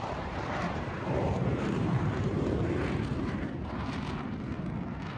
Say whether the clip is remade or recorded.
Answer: remade